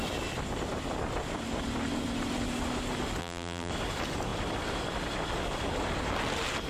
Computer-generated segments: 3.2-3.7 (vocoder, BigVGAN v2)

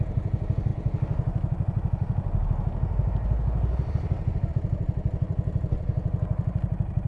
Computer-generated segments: none

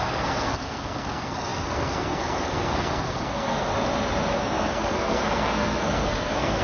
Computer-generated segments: 0.0-3.7 (codec, SNAC); 4.4-6.6